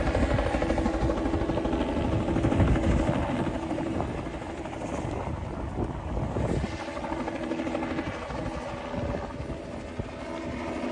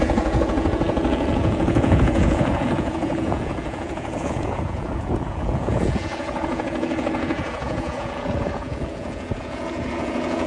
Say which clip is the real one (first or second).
first